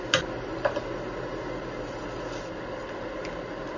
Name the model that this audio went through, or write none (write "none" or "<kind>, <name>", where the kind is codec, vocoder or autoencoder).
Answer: none